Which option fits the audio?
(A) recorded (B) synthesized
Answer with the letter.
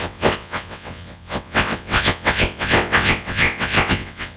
B